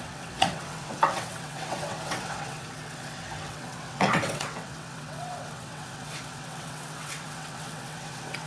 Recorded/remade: remade